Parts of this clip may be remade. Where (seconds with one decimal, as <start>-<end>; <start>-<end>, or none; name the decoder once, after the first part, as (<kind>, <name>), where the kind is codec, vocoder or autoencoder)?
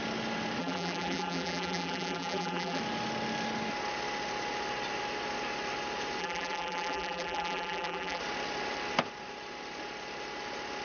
0.6-2.8 (vocoder, BigVGAN v2); 6.2-8.2